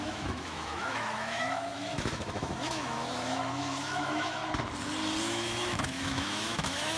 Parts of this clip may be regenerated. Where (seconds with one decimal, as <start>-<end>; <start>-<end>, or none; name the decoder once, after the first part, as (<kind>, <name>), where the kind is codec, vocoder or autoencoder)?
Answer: 0.0-4.4 (autoencoder, DAC-VAE); 5.2-7.0